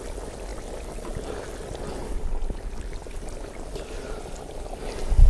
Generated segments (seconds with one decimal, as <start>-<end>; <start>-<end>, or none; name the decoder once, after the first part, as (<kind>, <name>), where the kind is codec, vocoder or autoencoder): 0.5-1.4 (vocoder, BigVGAN v2); 2.0-4.8